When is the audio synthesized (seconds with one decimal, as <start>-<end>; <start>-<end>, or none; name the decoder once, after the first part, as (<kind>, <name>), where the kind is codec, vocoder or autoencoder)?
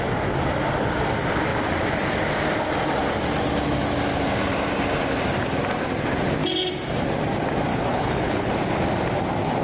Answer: 7.7-8.5 (codec, HILCodec)